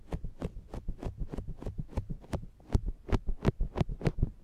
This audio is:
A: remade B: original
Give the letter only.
B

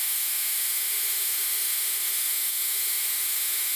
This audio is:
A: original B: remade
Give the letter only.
B